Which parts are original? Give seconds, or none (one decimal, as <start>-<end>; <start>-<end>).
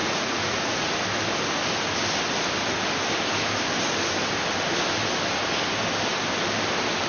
0.9-7.1